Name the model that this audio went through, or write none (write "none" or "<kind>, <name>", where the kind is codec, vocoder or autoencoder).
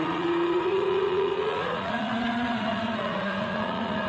vocoder, Vocos